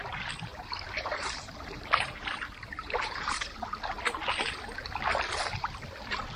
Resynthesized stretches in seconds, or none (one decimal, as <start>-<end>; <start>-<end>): 0.5-3.5